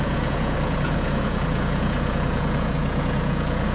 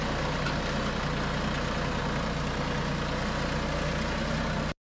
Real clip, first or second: second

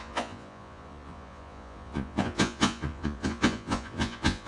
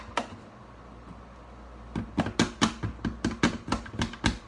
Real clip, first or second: second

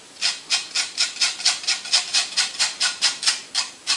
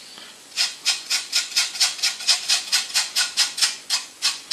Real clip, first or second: first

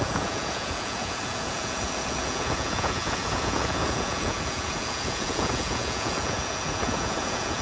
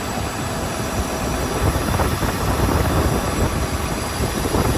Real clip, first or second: second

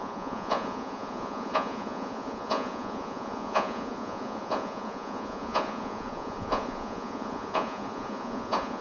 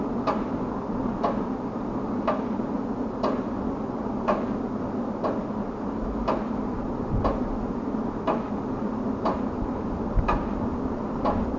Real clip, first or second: second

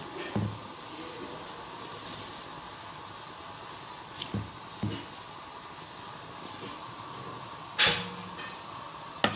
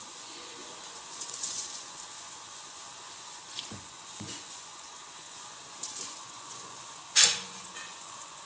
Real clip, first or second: first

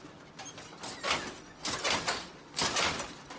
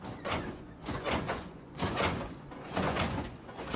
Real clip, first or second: first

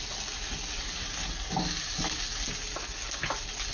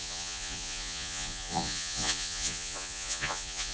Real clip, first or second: first